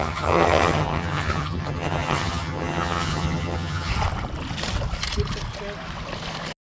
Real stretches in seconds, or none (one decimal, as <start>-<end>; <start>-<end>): 3.9-6.6